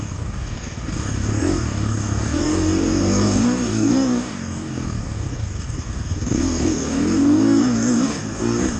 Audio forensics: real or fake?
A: fake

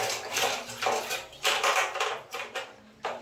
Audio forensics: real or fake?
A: real